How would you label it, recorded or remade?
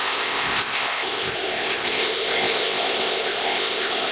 remade